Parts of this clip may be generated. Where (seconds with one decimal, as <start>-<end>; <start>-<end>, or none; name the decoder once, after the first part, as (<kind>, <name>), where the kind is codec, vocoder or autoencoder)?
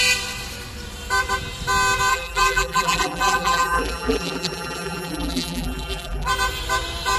2.1-6.3 (vocoder, BigVGAN v2)